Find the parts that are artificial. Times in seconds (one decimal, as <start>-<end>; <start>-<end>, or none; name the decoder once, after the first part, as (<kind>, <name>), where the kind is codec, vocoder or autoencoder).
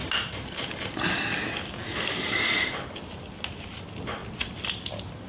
none